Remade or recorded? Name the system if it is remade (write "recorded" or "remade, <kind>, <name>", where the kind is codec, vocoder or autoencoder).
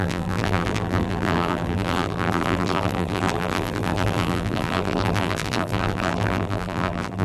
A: remade, vocoder, BigVGAN v2